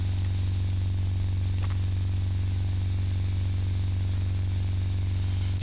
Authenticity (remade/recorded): recorded